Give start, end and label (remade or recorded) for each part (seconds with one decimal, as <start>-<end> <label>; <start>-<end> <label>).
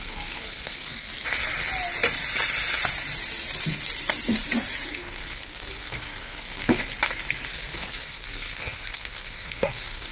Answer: 0.0-1.1 remade; 1.1-4.9 recorded; 4.9-6.8 remade; 6.8-7.5 recorded; 7.5-10.1 remade